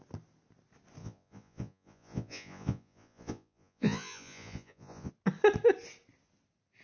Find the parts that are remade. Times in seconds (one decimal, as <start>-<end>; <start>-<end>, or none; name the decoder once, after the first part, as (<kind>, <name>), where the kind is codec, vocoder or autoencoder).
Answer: 1.0-5.1 (vocoder, Vocos)